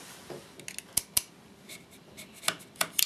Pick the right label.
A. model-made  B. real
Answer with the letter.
B